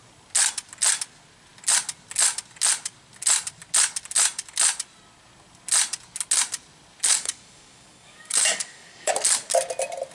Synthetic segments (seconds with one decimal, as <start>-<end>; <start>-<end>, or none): 7.1-9.1